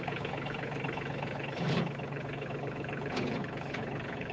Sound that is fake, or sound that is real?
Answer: fake